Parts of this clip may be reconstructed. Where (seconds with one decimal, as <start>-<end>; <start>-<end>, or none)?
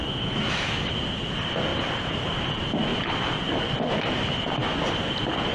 0.0-0.7